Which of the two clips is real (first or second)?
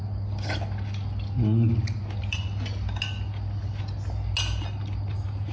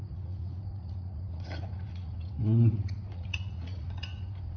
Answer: first